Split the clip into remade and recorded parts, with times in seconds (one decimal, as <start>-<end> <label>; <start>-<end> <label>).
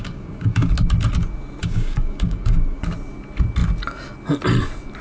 0.0-0.7 remade; 0.7-1.6 recorded; 1.6-2.8 remade; 2.8-5.0 recorded